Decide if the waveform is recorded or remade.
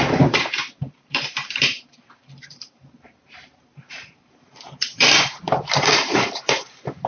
remade